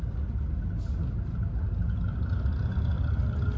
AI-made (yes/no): no